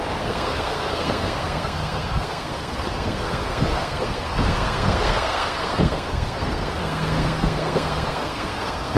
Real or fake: fake